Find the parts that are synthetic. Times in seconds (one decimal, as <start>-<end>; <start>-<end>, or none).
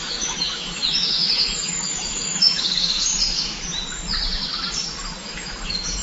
0.0-3.1; 5.2-6.0